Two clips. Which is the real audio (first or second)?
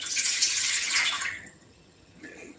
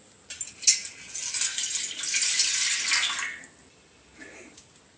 second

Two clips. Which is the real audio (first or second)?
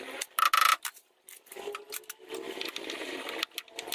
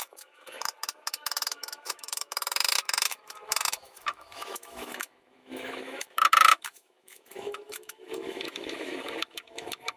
first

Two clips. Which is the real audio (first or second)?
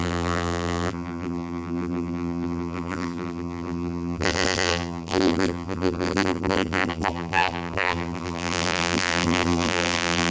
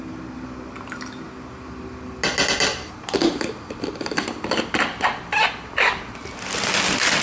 second